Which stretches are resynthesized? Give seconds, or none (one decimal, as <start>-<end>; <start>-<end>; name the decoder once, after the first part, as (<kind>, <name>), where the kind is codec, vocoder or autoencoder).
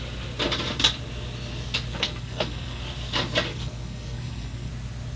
1.9-2.8 (codec, SNAC); 3.5-4.7